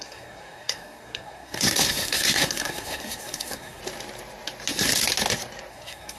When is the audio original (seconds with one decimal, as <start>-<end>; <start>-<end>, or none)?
3.8-5.7